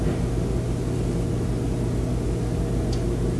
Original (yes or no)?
yes